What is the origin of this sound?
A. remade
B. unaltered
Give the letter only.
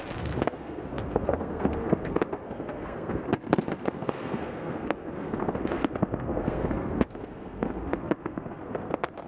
A